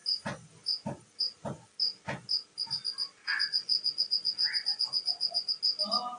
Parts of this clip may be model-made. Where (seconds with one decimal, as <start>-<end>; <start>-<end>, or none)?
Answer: 3.3-5.5